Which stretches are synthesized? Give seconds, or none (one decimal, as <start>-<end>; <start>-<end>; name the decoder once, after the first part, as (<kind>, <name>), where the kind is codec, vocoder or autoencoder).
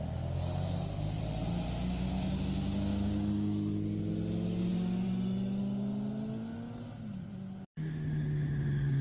4.7-5.6 (vocoder, BigVGAN v2)